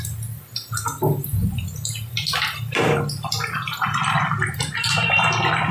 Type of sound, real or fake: fake